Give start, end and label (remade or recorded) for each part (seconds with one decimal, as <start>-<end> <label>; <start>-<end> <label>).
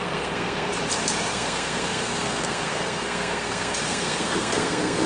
0.0-0.7 remade; 0.7-1.3 recorded; 1.3-5.1 remade